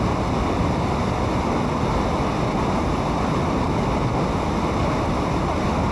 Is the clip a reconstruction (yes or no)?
no